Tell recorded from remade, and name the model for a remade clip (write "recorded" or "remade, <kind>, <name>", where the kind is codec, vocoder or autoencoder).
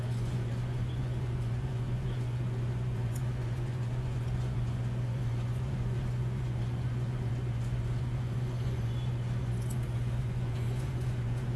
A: remade, vocoder, Vocos